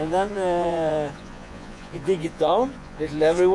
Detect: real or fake fake